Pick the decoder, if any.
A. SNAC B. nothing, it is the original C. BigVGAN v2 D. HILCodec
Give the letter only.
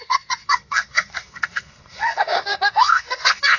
A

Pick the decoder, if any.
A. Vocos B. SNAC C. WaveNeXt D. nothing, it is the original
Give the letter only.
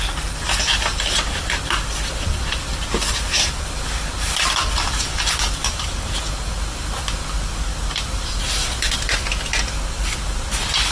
D